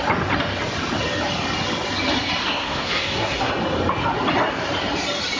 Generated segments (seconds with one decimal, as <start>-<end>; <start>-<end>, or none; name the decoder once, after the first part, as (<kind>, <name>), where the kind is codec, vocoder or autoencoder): 2.4-3.5 (codec, SNAC)